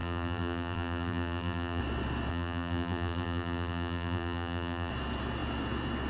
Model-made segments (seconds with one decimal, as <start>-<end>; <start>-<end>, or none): 0.0-1.8; 2.3-4.9